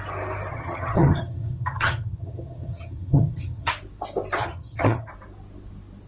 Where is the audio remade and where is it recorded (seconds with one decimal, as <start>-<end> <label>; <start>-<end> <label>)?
0.0-0.5 recorded; 0.5-3.7 remade; 3.7-4.4 recorded; 4.4-5.1 remade; 5.1-6.1 recorded